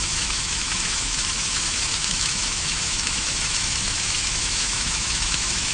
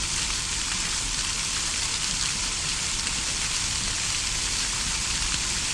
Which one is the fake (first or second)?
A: first